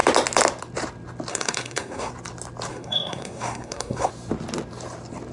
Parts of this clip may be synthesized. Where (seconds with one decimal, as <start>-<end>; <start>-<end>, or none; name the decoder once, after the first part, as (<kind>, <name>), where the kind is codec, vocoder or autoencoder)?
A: 1.3-2.1 (codec, SNAC); 2.7-4.1